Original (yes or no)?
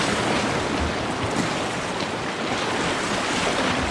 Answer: yes